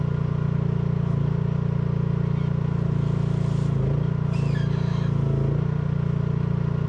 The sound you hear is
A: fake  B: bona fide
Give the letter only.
B